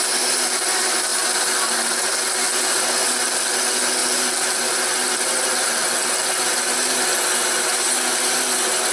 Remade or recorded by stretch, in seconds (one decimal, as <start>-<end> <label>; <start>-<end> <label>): 0.0-8.9 recorded